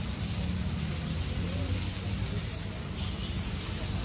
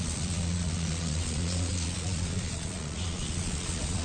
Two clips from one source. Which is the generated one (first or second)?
second